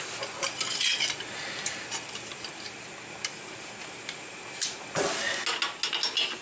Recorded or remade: recorded